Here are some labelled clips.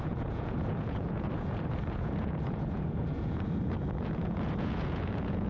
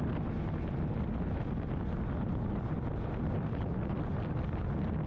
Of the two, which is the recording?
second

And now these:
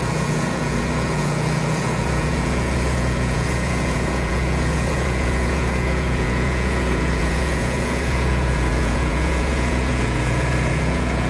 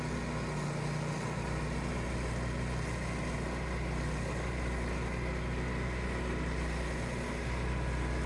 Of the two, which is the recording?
second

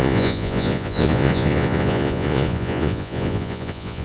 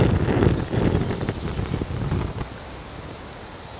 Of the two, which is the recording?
second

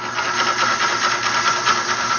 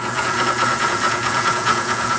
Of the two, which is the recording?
first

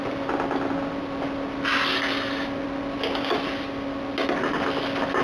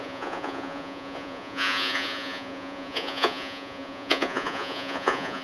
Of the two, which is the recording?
first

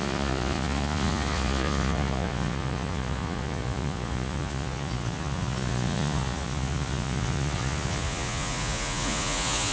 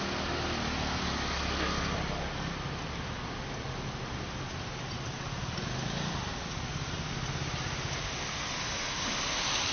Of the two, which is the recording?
second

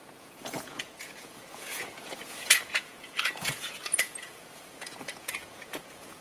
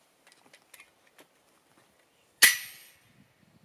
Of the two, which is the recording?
second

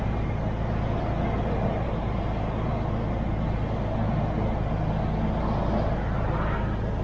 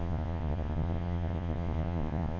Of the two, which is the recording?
first